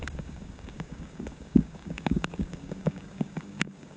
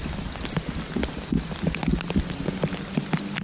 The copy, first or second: first